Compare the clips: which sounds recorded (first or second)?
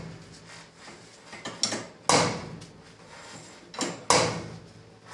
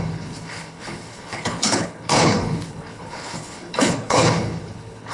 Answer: first